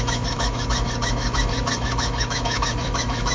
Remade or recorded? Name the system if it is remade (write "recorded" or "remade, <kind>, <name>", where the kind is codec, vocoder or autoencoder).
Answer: remade, autoencoder, DAC-VAE